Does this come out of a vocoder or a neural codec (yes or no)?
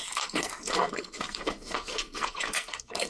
yes